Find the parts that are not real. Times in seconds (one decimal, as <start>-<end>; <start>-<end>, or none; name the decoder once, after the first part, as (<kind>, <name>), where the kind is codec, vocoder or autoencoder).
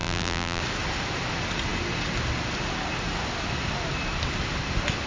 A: 0.0-0.6 (vocoder, BigVGAN v2)